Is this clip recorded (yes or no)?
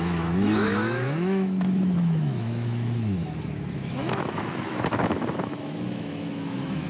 no